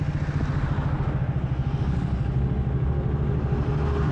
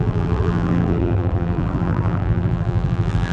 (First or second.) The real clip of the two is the first